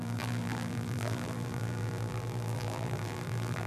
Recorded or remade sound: remade